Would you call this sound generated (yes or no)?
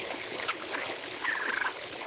yes